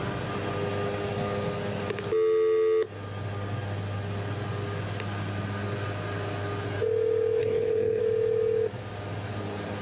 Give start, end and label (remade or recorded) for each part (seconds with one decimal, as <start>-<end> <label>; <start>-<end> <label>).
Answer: 0.0-7.4 recorded; 7.4-8.0 remade; 8.0-9.8 recorded